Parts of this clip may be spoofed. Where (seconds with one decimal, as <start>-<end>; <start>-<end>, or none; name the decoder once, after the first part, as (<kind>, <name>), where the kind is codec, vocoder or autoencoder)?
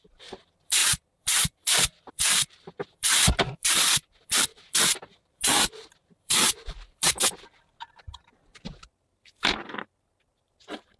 0.0-11.0 (vocoder, BigVGAN v2)